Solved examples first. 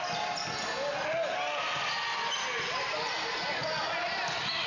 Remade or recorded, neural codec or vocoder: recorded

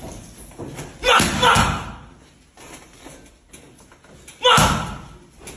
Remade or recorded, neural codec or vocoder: recorded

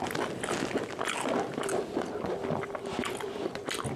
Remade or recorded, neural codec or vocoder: recorded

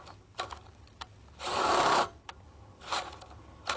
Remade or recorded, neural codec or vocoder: recorded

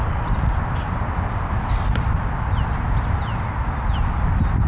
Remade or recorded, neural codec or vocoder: recorded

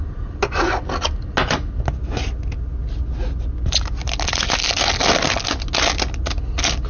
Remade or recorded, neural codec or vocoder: recorded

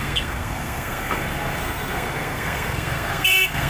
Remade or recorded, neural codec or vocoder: remade, codec, SNAC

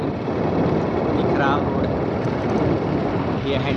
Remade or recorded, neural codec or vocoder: recorded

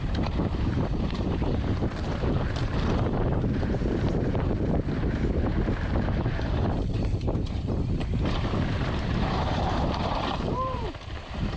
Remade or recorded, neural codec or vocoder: remade, vocoder, BigVGAN v2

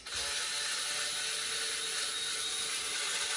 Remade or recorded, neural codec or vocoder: recorded